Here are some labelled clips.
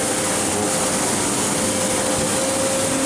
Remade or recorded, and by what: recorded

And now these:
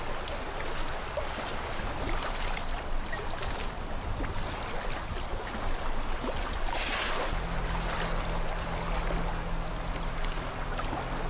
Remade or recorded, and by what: recorded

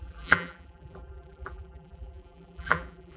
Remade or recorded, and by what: remade, vocoder, BigVGAN v2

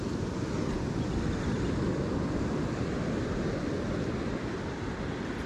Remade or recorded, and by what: remade, vocoder, BigVGAN v2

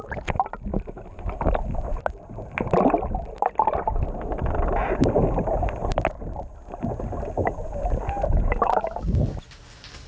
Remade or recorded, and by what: recorded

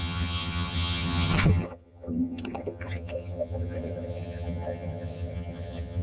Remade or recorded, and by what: remade, vocoder, HiFi-GAN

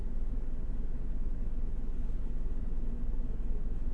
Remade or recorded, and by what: recorded